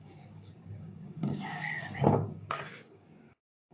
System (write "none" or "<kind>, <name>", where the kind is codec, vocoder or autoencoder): codec, DAC